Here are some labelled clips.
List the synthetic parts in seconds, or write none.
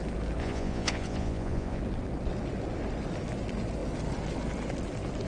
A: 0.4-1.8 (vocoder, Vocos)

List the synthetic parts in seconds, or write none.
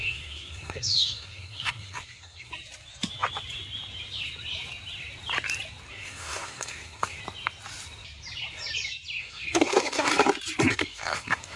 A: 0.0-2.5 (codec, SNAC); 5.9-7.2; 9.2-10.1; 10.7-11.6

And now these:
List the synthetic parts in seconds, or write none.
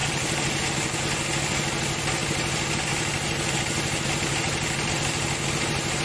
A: 0.0-1.0 (vocoder, BigVGAN v2)